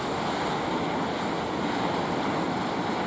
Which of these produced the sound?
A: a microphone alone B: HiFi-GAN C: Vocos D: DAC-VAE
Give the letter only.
A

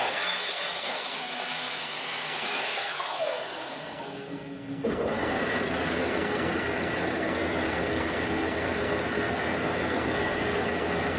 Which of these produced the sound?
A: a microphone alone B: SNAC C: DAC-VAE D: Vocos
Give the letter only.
B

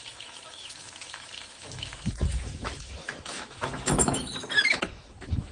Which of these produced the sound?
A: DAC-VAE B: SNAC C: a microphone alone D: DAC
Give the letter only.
A